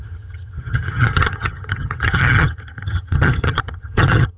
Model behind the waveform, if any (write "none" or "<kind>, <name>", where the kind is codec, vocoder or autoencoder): vocoder, HiFi-GAN